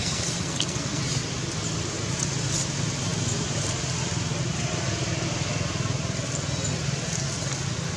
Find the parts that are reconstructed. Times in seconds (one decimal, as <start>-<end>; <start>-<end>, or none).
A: 0.0-1.0